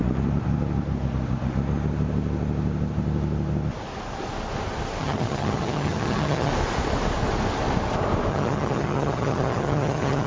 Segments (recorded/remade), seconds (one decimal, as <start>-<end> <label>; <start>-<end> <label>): 0.0-5.0 recorded; 5.0-6.5 remade; 6.5-8.3 recorded; 8.3-10.3 remade